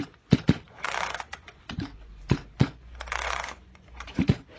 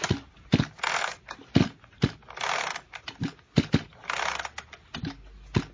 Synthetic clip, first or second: first